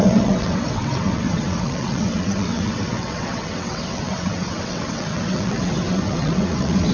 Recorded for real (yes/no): no